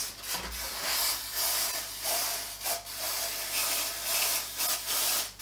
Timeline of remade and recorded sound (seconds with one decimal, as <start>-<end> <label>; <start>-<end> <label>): 0.0-5.4 recorded